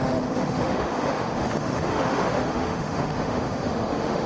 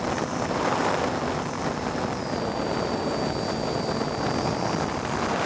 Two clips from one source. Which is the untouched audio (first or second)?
second